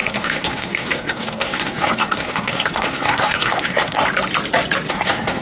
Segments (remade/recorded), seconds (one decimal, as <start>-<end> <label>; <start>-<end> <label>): 0.0-4.0 remade; 4.0-4.9 recorded; 4.9-5.4 remade